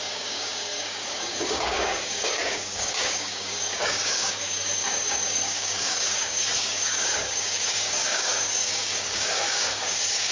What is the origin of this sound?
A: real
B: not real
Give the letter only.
B